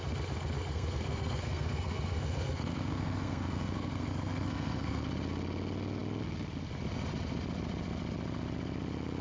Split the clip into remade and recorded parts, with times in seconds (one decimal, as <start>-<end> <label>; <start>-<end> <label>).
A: 0.0-0.7 recorded; 0.7-5.0 remade; 5.0-9.2 recorded